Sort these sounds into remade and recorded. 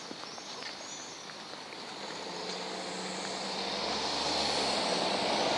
recorded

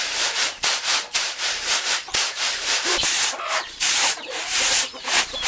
remade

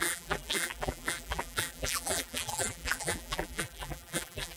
remade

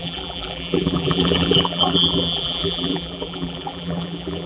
remade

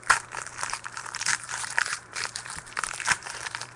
remade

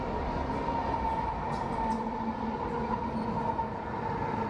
recorded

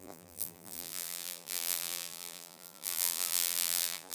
remade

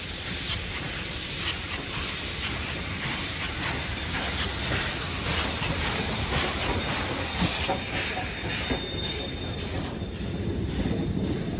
remade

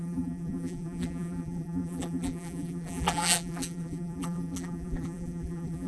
remade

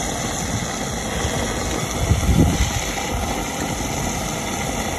recorded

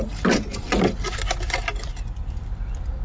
recorded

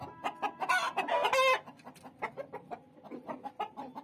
recorded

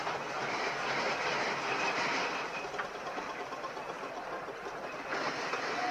recorded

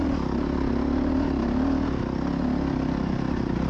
recorded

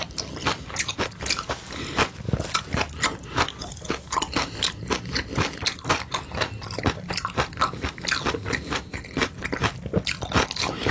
recorded